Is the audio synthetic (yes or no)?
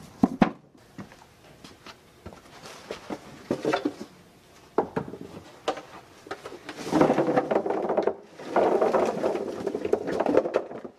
no